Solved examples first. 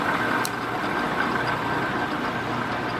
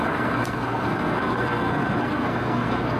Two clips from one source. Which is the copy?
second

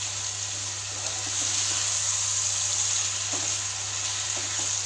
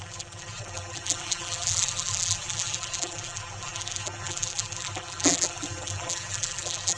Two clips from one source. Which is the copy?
second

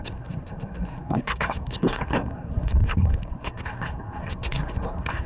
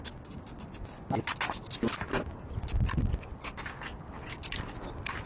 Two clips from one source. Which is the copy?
first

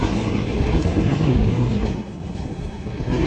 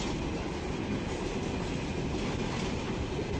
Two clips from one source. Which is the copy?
first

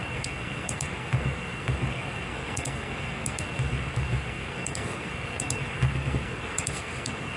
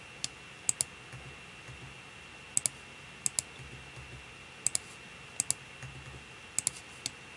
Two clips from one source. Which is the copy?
first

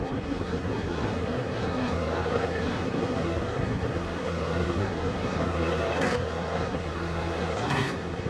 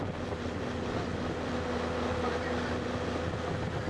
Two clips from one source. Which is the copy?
first